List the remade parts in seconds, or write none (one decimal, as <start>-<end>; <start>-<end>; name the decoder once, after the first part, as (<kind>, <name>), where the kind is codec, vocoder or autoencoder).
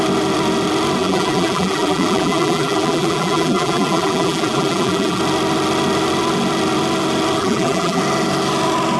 1.0-5.2 (vocoder, BigVGAN v2); 7.4-8.0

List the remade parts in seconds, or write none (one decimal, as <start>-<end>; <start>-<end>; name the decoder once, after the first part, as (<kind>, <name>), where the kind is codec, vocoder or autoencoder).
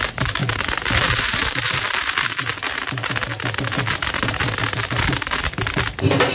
0.0-3.3 (vocoder, BigVGAN v2); 4.1-6.3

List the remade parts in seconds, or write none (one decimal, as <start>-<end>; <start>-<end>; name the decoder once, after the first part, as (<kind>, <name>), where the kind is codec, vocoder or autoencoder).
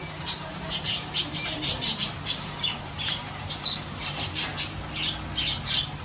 0.0-4.5 (vocoder, BigVGAN v2)